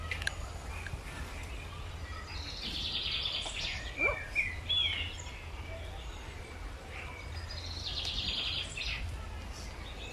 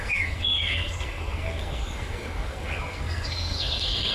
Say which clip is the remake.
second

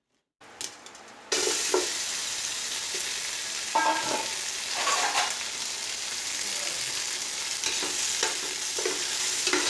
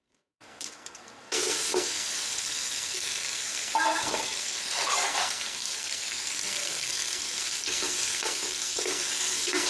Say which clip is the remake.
second